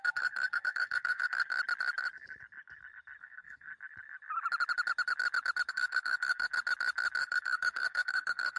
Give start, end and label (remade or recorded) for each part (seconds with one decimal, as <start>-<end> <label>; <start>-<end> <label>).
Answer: 0.0-1.5 remade; 1.5-3.2 recorded; 3.2-3.7 remade; 3.7-5.7 recorded; 5.7-6.5 remade; 6.5-7.2 recorded; 7.2-8.6 remade